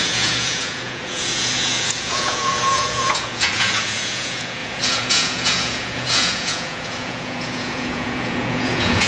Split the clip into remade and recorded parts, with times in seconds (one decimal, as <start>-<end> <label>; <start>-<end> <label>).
0.0-9.1 remade